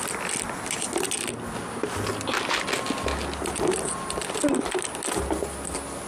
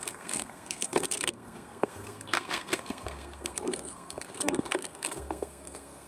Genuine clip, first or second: first